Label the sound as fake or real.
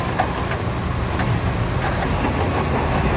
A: real